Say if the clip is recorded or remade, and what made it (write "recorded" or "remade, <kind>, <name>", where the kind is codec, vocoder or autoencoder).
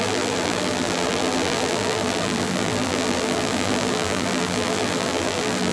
remade, vocoder, BigVGAN v2